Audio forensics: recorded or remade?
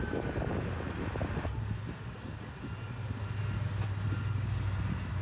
recorded